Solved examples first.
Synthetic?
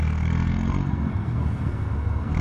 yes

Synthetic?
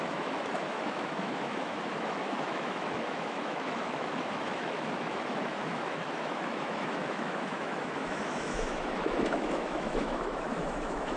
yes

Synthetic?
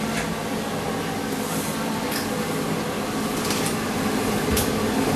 no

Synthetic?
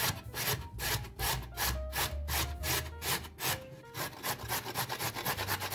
no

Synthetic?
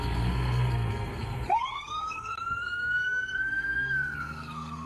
yes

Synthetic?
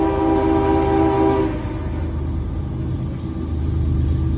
no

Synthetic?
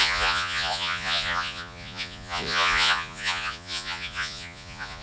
yes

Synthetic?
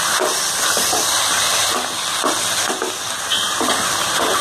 no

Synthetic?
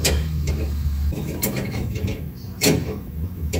yes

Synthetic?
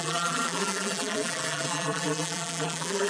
yes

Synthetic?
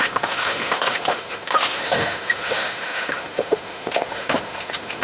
yes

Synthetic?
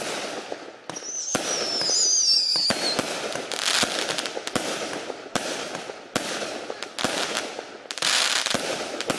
no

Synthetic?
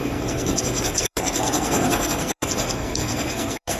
yes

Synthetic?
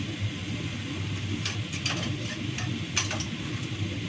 no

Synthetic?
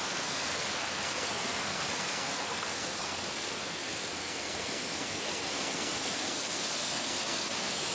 yes